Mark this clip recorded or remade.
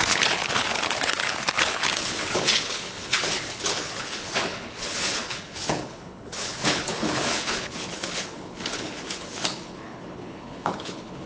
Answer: remade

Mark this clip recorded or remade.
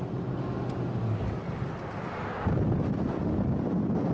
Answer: recorded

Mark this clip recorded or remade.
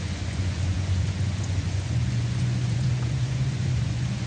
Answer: remade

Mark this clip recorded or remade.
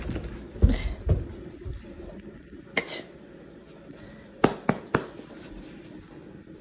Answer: recorded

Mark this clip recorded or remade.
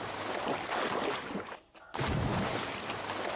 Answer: recorded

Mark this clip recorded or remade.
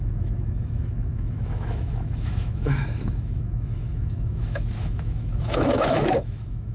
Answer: remade